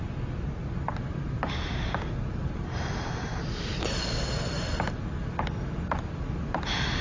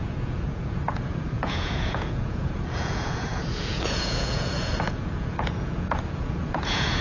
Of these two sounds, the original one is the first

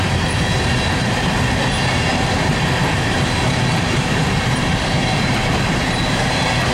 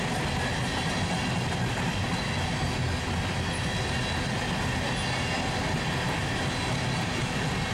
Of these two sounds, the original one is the second